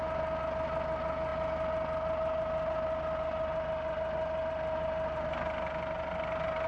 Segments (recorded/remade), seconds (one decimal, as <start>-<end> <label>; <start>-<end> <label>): 0.0-6.7 recorded